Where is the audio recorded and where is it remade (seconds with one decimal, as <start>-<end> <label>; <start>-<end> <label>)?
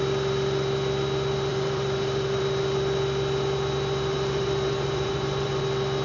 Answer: 0.0-1.5 recorded; 1.5-2.4 remade; 2.4-4.1 recorded; 4.1-5.6 remade; 5.6-6.0 recorded